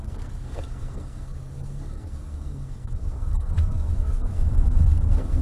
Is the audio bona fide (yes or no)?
no